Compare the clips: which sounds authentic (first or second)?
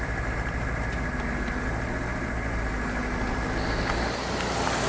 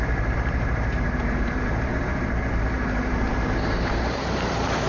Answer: first